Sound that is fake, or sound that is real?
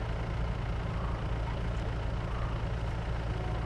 real